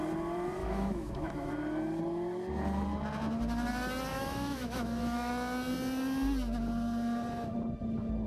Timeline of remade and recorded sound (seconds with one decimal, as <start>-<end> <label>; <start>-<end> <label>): 0.0-0.6 recorded; 0.6-1.5 remade; 1.5-4.1 recorded; 4.1-5.3 remade; 5.3-8.3 recorded